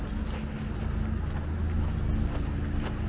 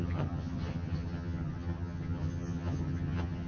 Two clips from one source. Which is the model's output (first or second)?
second